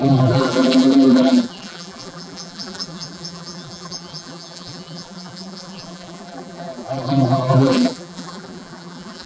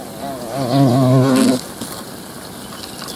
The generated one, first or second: first